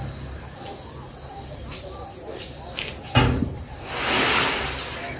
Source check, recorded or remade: recorded